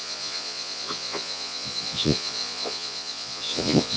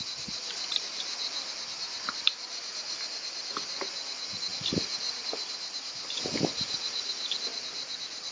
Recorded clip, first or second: second